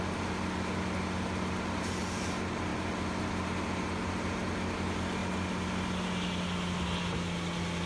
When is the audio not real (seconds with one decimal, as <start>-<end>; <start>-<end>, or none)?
none